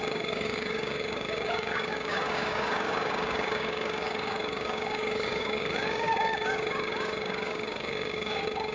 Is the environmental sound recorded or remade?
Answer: remade